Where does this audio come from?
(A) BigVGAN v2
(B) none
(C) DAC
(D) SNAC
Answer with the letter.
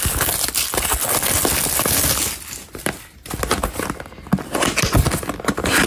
B